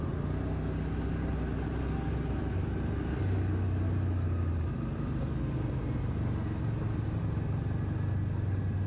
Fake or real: real